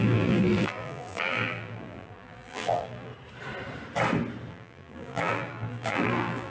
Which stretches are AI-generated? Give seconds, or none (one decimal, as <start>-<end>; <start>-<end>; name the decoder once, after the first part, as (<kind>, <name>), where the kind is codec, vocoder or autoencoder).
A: 0.0-3.1 (vocoder, BigVGAN v2); 4.5-6.5